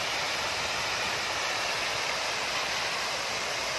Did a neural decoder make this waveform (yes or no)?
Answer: no